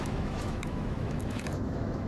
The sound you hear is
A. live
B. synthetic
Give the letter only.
B